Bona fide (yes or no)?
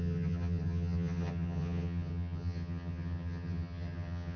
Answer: no